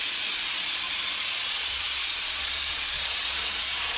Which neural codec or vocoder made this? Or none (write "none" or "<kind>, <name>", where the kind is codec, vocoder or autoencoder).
vocoder, Vocos